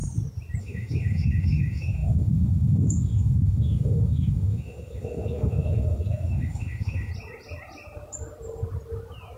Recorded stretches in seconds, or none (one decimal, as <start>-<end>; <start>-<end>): 0.0-0.6; 7.1-9.4